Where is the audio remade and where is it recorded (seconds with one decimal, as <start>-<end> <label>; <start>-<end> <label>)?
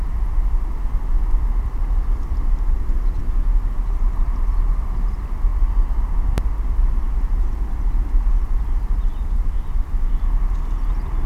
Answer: 0.0-1.1 recorded; 1.1-3.2 remade; 3.2-5.5 recorded; 5.5-6.8 remade; 6.8-11.3 recorded